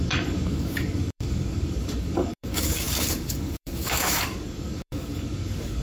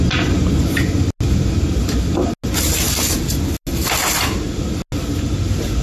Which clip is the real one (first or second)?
second